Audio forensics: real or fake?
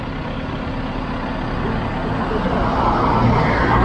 real